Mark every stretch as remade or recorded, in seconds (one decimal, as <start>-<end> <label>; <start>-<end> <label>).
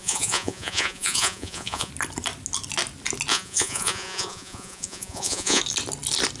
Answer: 0.0-1.9 remade; 1.9-3.3 recorded; 3.3-5.6 remade; 5.6-6.4 recorded